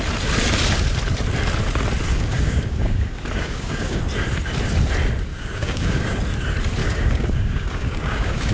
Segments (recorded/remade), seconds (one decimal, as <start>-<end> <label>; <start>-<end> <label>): 0.0-2.1 recorded; 2.1-4.0 remade; 4.0-5.3 recorded; 5.3-6.2 remade; 6.2-6.8 recorded; 6.8-8.5 remade